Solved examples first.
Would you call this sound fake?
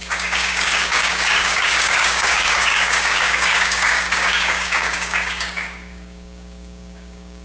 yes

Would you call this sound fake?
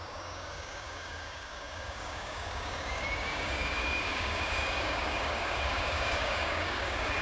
yes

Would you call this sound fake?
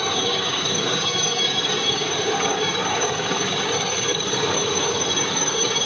yes